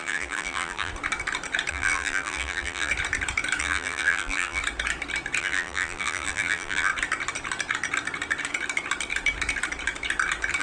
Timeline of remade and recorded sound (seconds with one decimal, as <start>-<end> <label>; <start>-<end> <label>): 0.0-0.9 remade; 0.9-1.7 recorded; 1.7-2.9 remade; 2.9-3.6 recorded; 3.6-4.6 remade; 4.6-5.4 recorded; 5.4-6.9 remade; 6.9-10.6 recorded